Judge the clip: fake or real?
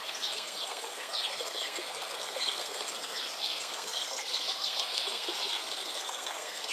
fake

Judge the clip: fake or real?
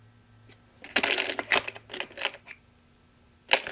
real